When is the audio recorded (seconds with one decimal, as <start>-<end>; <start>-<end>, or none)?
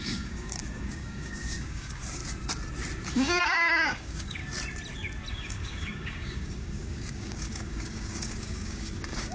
2.2-3.1; 4.4-5.3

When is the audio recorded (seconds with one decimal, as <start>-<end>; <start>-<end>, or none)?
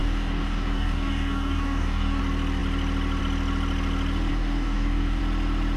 2.2-4.3; 5.2-5.8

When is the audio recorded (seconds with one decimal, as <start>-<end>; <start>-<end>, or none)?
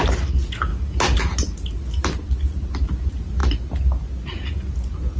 0.0-5.2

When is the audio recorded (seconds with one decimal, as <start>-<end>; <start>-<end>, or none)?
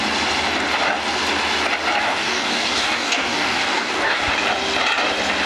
0.0-2.0; 4.3-5.5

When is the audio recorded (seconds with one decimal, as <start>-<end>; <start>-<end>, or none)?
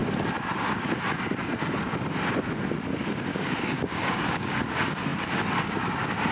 0.0-3.3; 4.6-6.3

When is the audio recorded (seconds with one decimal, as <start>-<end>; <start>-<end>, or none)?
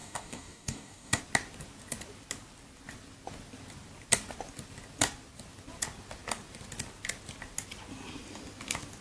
1.2-9.0